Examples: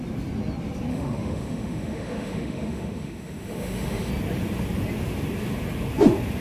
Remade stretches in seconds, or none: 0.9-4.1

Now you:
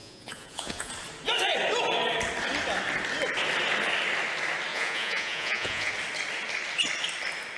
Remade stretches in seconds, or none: 0.0-0.9; 4.7-5.9